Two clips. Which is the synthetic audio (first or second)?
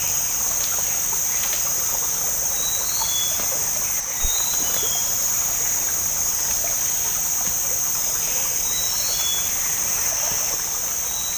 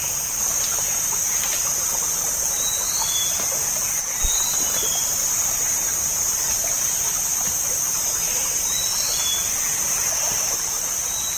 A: second